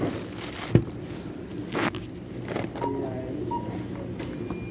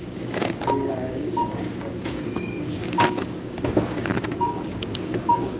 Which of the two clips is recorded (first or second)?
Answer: first